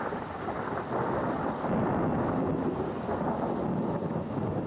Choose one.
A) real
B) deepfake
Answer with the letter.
A